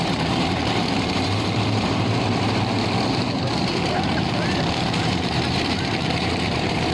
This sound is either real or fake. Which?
fake